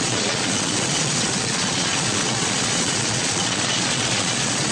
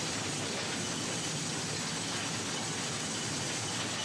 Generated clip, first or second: first